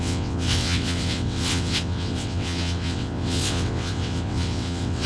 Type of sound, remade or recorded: remade